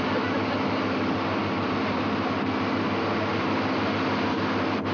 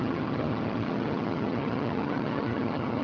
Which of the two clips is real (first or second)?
first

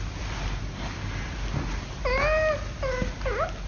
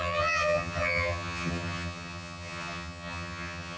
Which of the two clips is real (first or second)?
first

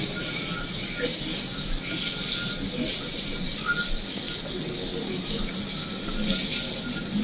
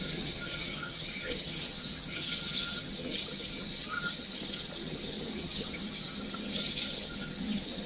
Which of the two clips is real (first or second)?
first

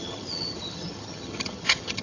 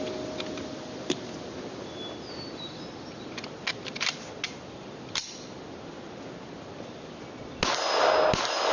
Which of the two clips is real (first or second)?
second